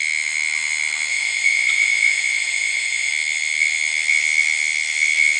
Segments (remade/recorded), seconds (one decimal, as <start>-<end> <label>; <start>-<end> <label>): 0.0-1.1 recorded; 1.1-3.1 remade; 3.1-5.4 recorded